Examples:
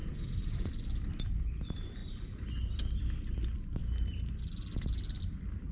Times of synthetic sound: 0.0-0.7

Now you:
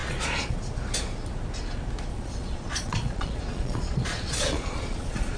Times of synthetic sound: 0.0-0.6; 2.1-5.4

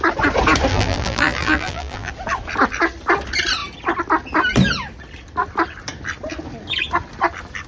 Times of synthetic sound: 0.7-2.1